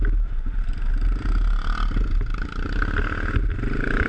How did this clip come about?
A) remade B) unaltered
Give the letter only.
B